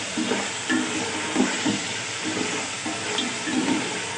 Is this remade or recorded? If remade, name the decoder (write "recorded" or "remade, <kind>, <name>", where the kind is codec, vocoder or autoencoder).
recorded